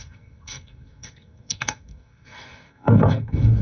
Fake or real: fake